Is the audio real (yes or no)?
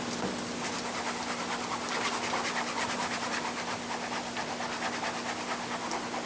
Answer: yes